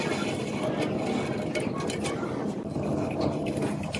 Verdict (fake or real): real